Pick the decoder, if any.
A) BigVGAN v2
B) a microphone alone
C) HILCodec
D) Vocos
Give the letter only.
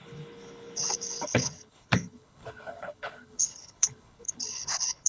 C